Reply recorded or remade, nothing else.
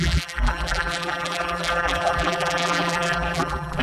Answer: remade